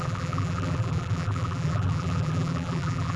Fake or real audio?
fake